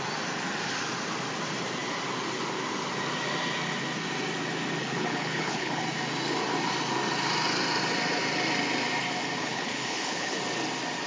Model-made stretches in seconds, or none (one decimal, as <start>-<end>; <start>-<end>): 4.8-5.8; 9.4-10.4